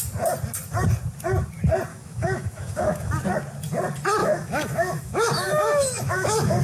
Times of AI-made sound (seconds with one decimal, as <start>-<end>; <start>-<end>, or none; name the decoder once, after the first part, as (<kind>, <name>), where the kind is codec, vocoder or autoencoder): 1.9-3.1 (autoencoder, DAC-VAE); 4.2-6.6